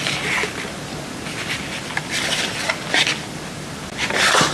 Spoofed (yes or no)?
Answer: no